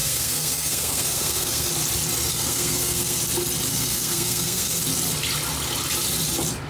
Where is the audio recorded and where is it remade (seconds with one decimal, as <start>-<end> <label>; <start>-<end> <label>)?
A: 0.0-1.7 remade; 1.7-2.3 recorded; 2.3-3.2 remade; 3.2-3.7 recorded; 3.7-4.8 remade; 4.8-6.7 recorded